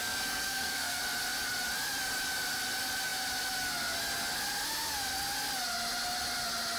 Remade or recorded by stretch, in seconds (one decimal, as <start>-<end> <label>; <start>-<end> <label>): 0.0-1.0 remade; 1.0-6.8 recorded